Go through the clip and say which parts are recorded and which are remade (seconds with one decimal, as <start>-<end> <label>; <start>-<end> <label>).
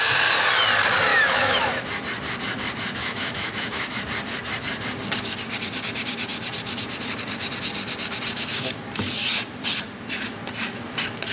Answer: 0.0-1.1 recorded; 1.1-1.7 remade; 1.7-3.0 recorded; 3.0-4.0 remade; 4.0-11.3 recorded